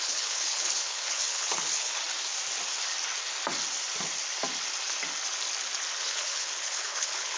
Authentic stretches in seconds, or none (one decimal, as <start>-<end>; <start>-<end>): 2.0-6.0